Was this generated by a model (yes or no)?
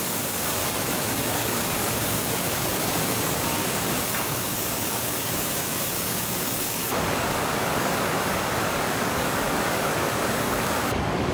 yes